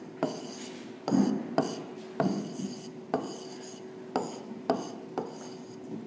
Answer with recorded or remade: recorded